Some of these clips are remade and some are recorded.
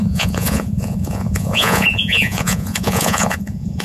remade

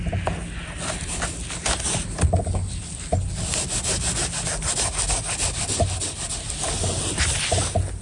recorded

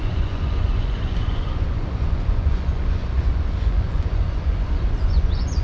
remade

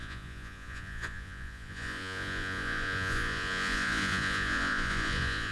remade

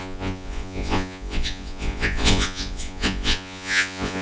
remade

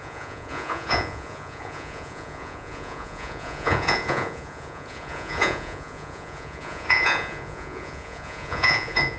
remade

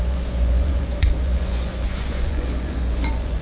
remade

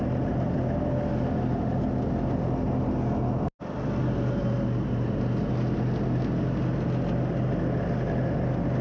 recorded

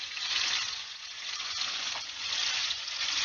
remade